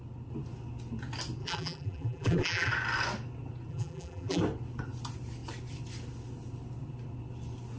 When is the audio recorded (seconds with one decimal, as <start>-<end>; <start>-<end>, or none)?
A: 0.0-1.4; 2.7-3.7; 4.4-7.8